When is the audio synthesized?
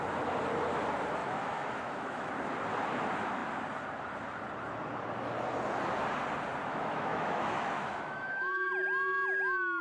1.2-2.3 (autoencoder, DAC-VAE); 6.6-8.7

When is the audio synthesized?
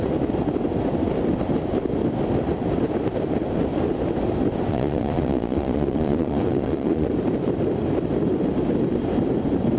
4.7-7.1 (vocoder, Vocos)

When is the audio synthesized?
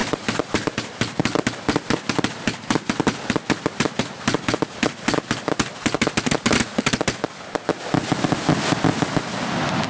0.0-1.0 (vocoder, BigVGAN v2)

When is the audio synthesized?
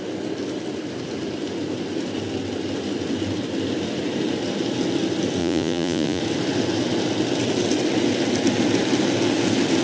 5.4-6.2 (vocoder, Vocos)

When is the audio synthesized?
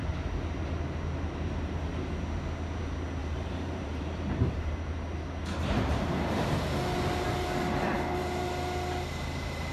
3.2-4.7 (vocoder, BigVGAN v2); 5.6-6.4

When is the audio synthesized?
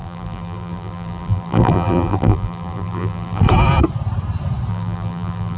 0.0-3.4 (vocoder, BigVGAN v2); 4.7-5.6